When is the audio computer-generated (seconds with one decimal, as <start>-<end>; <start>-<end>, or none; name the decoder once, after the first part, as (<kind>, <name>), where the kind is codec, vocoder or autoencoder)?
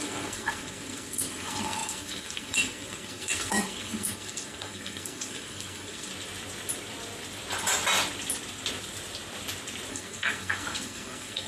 0.0-6.1 (codec, SNAC); 9.9-11.5